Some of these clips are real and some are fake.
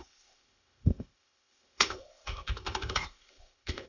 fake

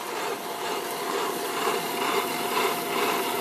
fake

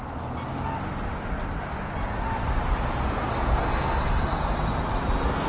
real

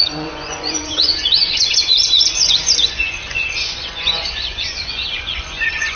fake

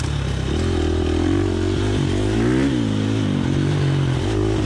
real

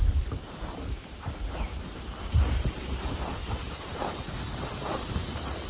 real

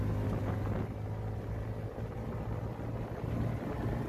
real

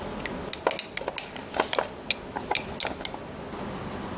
real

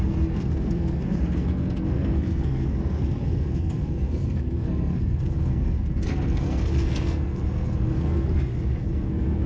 fake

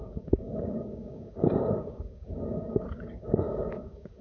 fake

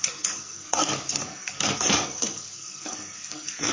fake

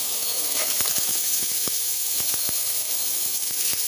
fake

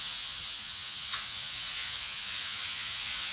fake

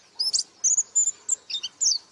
real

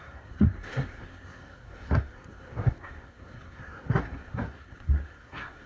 fake